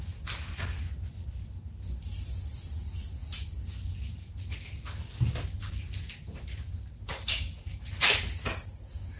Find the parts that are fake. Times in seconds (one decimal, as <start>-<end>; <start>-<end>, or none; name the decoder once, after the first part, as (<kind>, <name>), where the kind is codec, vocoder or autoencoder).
7.1-8.2 (codec, DAC)

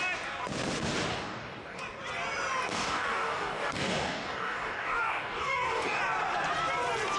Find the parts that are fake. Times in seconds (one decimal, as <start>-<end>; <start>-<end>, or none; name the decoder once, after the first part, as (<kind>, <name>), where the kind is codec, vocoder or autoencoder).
1.1-1.8 (codec, DAC); 2.7-6.0